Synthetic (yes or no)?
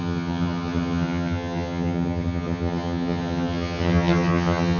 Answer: yes